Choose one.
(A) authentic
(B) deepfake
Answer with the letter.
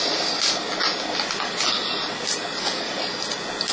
A